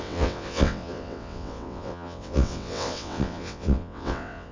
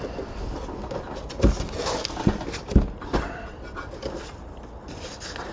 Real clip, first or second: second